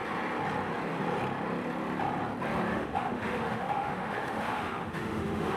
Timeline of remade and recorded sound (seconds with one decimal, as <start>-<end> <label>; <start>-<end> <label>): 0.0-2.7 recorded; 2.7-5.6 remade